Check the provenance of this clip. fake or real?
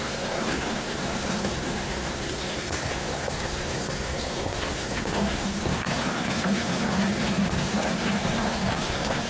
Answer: fake